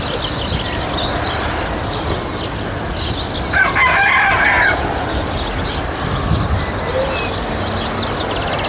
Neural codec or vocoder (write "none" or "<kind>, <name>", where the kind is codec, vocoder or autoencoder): none